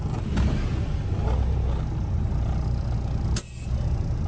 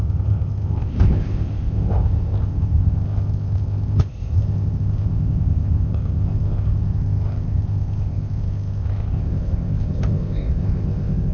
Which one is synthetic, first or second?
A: second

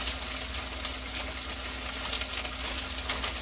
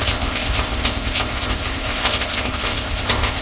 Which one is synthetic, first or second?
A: second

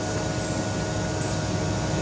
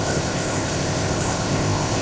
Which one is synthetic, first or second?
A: second